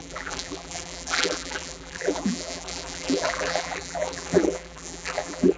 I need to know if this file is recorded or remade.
remade